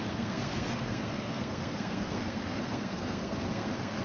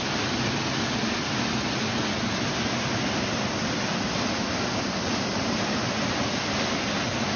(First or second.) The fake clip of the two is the first